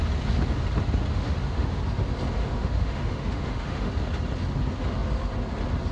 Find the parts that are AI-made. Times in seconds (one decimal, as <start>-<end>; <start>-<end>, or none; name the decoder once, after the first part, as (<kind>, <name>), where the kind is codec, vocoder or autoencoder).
1.1-1.8 (autoencoder, DAC-VAE); 2.4-3.9